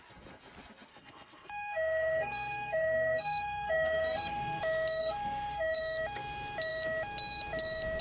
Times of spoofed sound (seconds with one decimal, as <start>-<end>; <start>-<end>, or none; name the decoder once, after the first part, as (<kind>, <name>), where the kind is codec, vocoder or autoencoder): 0.9-4.6 (codec, SNAC); 5.0-5.8